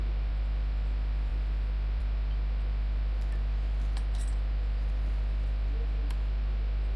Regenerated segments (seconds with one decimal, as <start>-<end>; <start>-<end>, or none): 0.0-1.3; 2.0-7.0